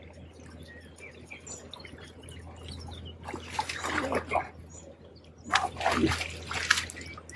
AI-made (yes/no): no